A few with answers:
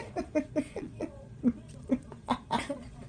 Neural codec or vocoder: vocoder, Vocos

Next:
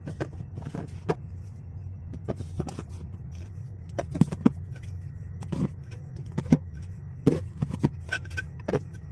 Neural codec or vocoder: vocoder, Vocos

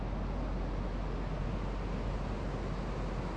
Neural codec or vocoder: none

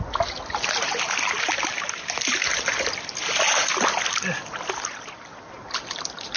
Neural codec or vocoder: none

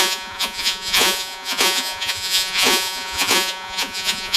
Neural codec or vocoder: vocoder, Vocos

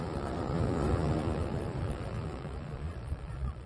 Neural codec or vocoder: vocoder, Vocos